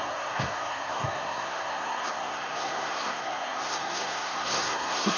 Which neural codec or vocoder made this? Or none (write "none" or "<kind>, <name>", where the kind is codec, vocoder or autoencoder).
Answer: codec, SNAC